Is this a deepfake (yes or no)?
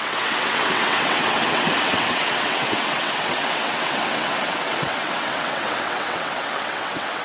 yes